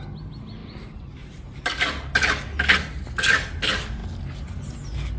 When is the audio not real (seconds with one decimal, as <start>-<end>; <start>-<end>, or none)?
0.6-1.6

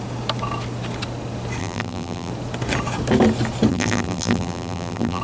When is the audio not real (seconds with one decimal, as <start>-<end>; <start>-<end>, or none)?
1.6-2.3; 3.7-5.2

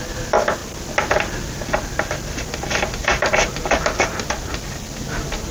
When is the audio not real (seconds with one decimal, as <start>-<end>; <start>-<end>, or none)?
none

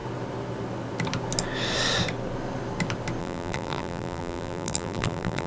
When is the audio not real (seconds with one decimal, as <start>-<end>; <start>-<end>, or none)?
3.2-5.5

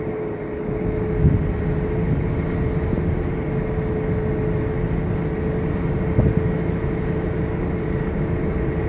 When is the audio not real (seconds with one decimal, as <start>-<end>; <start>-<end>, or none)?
none

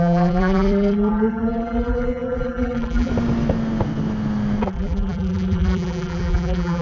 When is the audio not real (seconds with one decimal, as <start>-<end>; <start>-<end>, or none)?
0.0-3.1; 4.6-6.8

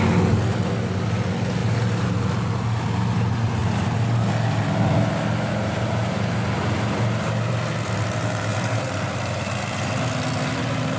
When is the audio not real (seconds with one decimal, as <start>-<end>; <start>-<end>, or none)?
8.5-9.9